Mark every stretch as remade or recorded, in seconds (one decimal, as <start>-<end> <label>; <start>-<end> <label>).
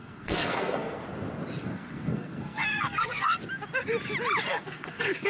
0.0-1.0 remade; 1.0-1.6 recorded; 1.6-3.4 remade; 3.4-4.5 recorded; 4.5-5.3 remade